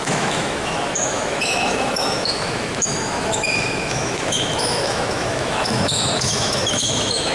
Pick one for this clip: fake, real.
fake